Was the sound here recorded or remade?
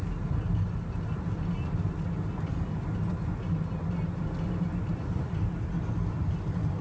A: recorded